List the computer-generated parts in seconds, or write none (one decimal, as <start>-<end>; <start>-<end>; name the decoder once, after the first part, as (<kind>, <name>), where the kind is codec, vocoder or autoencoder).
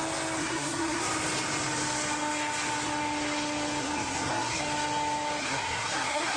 0.4-1.0 (codec, SNAC); 3.8-4.6; 5.4-6.4